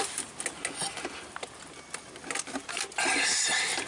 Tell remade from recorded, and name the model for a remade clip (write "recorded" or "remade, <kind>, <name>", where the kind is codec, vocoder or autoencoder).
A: recorded